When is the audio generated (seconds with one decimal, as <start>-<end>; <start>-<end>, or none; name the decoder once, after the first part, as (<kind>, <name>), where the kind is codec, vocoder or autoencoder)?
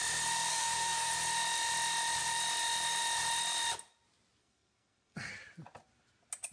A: 0.5-1.1 (codec, SNAC); 4.4-5.3